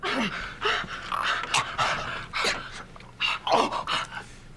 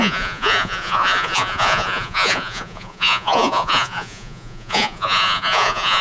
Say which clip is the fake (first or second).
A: second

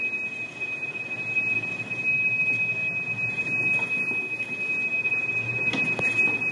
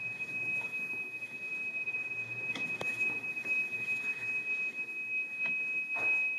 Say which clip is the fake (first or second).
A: second